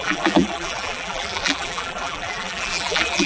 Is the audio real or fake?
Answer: fake